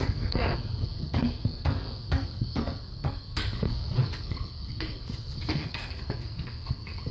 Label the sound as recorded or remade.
remade